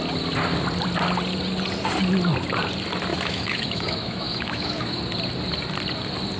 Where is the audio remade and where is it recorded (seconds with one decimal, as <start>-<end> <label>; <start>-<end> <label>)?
0.0-3.1 recorded; 3.1-5.0 remade; 5.0-6.4 recorded